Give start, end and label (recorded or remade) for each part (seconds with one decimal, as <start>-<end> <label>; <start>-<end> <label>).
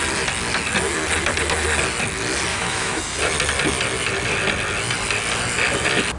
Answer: 0.0-2.5 recorded; 2.5-3.0 remade; 3.0-6.2 recorded